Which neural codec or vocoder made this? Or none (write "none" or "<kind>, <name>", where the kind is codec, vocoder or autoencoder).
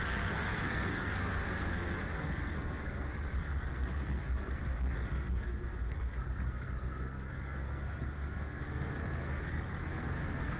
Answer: codec, SNAC